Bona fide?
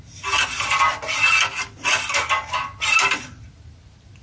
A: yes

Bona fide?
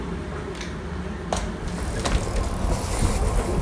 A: yes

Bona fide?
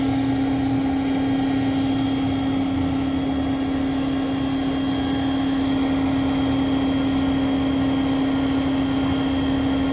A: yes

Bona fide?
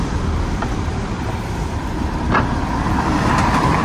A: no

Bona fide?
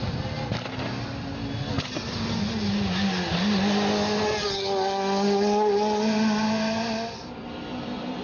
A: yes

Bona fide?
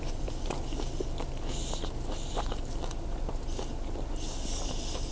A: yes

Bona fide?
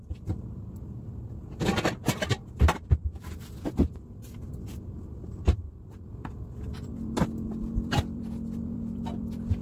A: no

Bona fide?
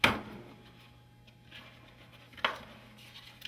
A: yes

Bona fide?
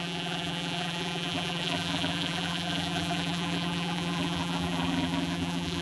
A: no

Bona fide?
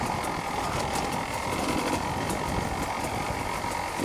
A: no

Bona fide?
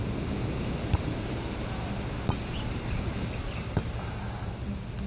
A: no